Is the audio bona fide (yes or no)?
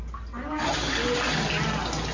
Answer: yes